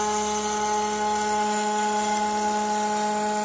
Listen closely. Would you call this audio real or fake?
real